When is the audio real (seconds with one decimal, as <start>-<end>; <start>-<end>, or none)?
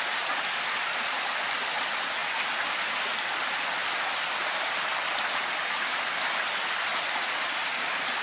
0.0-8.2